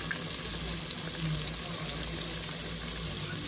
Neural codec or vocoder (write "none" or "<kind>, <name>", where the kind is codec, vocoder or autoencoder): none